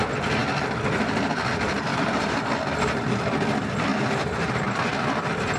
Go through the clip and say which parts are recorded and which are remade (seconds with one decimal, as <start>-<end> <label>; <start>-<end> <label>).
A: 0.0-1.9 recorded; 1.9-2.5 remade; 2.5-3.9 recorded; 3.9-4.5 remade; 4.5-5.6 recorded